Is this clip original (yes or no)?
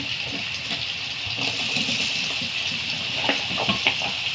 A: yes